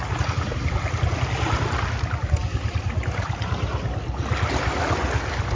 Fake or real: real